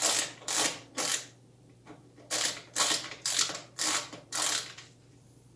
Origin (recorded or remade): remade